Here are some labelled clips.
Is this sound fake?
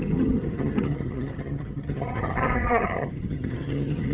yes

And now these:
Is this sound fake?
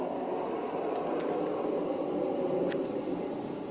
no